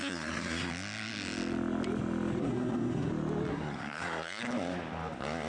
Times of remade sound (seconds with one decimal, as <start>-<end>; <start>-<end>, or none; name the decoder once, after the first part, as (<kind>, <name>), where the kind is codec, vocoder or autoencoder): 0.0-0.7 (codec, SNAC); 2.4-3.1; 3.5-4.4